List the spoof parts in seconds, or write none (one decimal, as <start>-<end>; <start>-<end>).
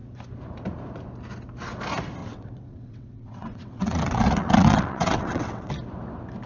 2.2-5.7